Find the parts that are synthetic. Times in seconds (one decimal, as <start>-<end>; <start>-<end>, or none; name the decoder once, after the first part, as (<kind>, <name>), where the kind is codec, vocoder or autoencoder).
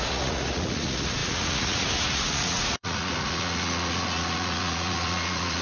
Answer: 0.0-5.6 (vocoder, Vocos)